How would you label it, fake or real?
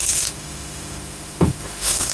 fake